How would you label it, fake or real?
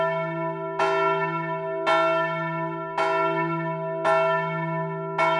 real